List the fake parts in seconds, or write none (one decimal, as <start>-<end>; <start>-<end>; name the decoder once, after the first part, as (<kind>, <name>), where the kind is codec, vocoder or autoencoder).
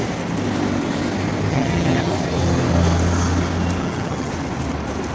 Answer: 1.5-2.1 (vocoder, HiFi-GAN); 3.8-4.3